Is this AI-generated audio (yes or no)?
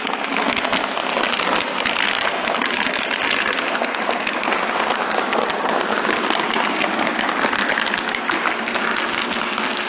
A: no